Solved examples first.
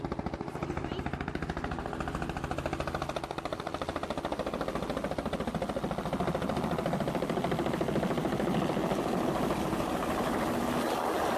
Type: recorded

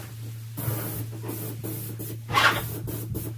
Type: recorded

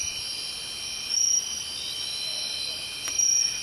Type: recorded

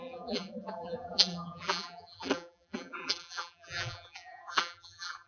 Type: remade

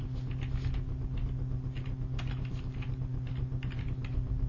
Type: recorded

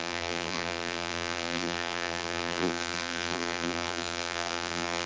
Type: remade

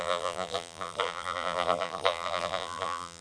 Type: remade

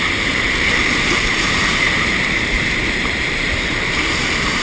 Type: remade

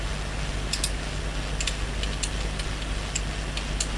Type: recorded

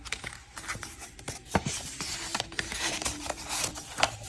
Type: remade